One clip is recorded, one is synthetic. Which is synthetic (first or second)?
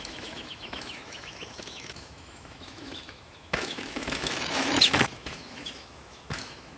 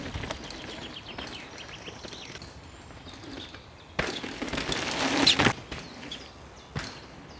first